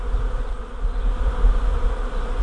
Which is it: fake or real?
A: real